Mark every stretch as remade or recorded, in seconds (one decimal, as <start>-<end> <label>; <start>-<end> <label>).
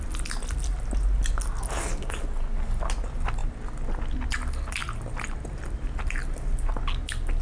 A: 0.0-7.4 recorded